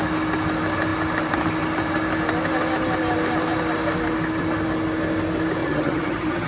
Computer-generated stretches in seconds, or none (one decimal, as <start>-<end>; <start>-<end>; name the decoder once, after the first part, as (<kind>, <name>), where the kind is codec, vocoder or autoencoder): 5.6-6.5 (vocoder, HiFi-GAN)

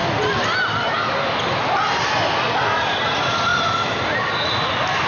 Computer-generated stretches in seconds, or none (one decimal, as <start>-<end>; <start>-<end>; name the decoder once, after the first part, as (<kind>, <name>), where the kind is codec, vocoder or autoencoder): none

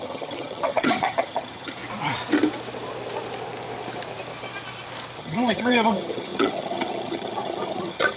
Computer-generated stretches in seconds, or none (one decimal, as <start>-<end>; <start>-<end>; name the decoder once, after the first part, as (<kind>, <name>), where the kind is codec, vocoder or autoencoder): 0.0-1.8 (vocoder, HiFi-GAN); 5.2-8.2

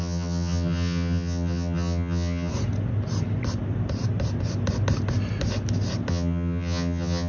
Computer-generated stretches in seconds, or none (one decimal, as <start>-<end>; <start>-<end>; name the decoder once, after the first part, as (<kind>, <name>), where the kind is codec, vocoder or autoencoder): 0.0-2.5 (vocoder, HiFi-GAN); 6.1-7.3

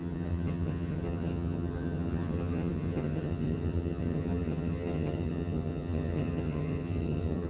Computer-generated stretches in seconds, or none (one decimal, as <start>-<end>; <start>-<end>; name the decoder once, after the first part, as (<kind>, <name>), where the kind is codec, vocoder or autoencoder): 0.0-7.5 (vocoder, HiFi-GAN)

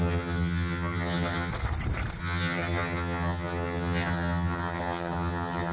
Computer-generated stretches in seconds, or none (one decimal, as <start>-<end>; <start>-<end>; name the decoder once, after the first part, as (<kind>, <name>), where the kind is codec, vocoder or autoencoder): 0.0-1.5 (vocoder, HiFi-GAN); 2.2-5.7

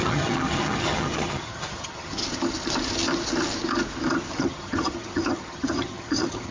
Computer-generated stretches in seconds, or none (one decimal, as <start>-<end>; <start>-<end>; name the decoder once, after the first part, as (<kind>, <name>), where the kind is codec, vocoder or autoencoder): 0.0-2.2 (vocoder, HiFi-GAN); 4.3-6.5

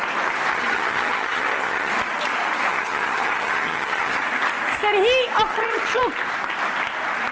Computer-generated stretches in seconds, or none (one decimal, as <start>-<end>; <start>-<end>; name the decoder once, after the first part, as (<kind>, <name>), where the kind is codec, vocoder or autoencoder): 0.5-1.9 (vocoder, HiFi-GAN); 2.7-4.2; 5.5-6.0